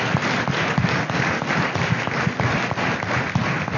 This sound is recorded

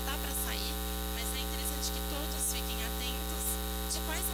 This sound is recorded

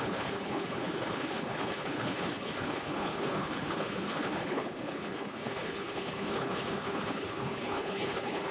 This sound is remade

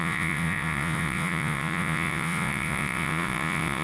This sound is remade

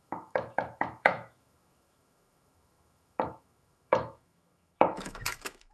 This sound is remade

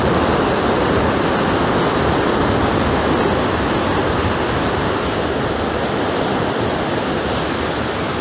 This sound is recorded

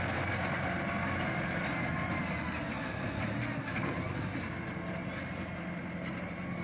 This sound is recorded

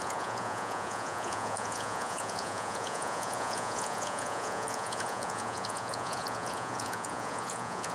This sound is remade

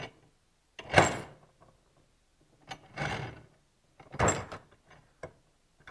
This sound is recorded